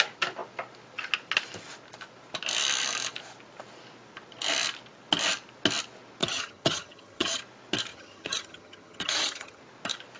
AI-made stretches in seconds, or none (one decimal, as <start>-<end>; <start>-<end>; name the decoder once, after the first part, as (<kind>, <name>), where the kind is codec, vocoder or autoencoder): 6.2-7.4 (vocoder, HiFi-GAN); 7.9-9.6